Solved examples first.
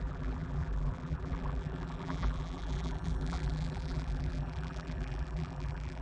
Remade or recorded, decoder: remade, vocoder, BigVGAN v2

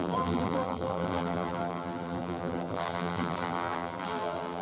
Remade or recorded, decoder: remade, vocoder, BigVGAN v2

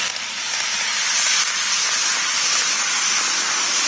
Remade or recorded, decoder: recorded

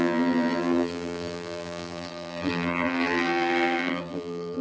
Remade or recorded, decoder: remade, vocoder, BigVGAN v2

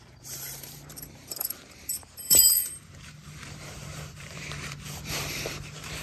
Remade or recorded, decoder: remade, vocoder, BigVGAN v2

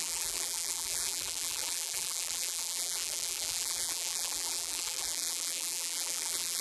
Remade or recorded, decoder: remade, vocoder, BigVGAN v2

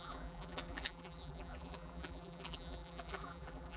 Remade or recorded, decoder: remade, vocoder, BigVGAN v2